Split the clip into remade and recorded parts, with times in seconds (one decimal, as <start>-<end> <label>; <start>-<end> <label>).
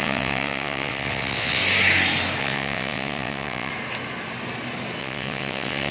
0.0-1.6 remade; 1.6-2.4 recorded; 2.4-3.7 remade; 3.7-5.0 recorded; 5.0-5.9 remade